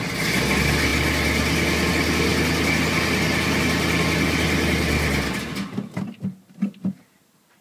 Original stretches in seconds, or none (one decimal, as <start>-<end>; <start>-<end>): 0.0-7.6